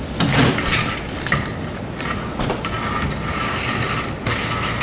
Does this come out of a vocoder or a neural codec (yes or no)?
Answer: no